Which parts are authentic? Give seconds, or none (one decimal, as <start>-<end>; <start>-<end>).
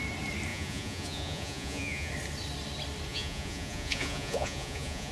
0.0-0.5; 2.1-3.1